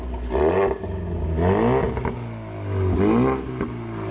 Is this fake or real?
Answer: real